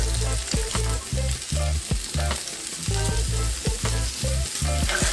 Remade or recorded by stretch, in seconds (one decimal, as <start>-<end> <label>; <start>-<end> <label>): 0.0-5.1 recorded